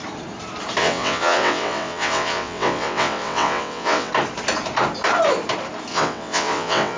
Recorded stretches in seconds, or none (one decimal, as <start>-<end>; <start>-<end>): 0.0-0.8; 4.1-5.9